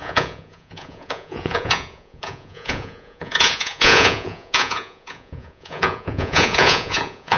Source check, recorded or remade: remade